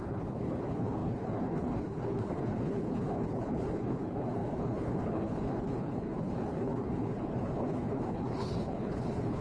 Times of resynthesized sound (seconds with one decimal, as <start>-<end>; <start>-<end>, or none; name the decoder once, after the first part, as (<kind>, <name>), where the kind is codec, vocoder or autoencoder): 0.0-9.4 (codec, HILCodec)